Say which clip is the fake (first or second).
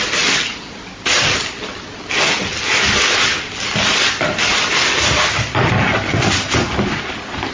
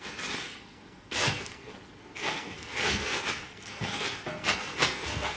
second